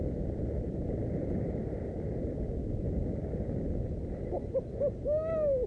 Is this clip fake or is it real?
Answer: real